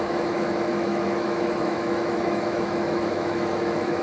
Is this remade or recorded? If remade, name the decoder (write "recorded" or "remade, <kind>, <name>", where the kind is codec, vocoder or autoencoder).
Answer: remade, autoencoder, DAC-VAE